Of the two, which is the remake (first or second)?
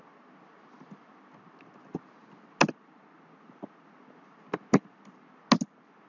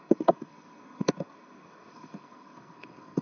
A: second